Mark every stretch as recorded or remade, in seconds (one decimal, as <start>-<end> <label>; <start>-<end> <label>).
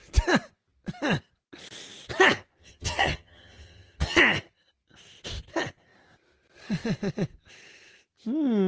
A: 0.0-2.6 recorded; 2.6-4.2 remade; 4.2-8.7 recorded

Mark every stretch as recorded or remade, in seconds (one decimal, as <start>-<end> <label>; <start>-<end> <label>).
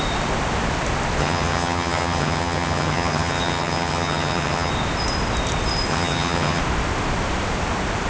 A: 0.0-1.2 recorded; 1.2-4.7 remade; 4.7-5.9 recorded; 5.9-6.6 remade; 6.6-8.1 recorded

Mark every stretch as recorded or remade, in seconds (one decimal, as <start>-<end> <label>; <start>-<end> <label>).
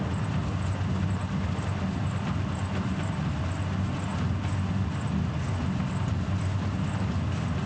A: 0.0-7.7 recorded